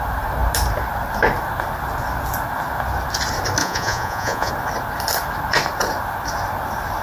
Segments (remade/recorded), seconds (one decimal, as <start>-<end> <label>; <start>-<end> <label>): 0.0-3.6 recorded; 3.6-4.5 remade; 4.5-7.0 recorded